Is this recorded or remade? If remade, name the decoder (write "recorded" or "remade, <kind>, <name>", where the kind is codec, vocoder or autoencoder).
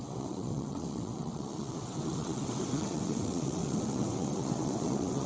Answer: remade, vocoder, WaveNeXt